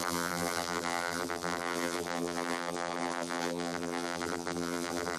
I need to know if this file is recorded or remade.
remade